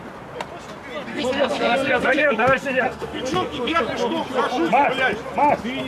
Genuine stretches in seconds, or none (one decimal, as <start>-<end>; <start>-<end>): 0.0-1.1; 3.8-5.9